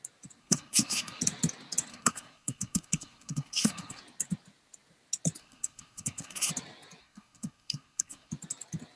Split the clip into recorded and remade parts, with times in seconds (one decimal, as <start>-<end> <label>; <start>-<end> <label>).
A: 0.0-0.4 recorded; 0.4-1.2 remade; 1.2-1.9 recorded; 1.9-4.0 remade; 4.0-5.4 recorded; 5.4-6.5 remade; 6.5-7.0 recorded; 7.0-8.3 remade; 8.3-9.0 recorded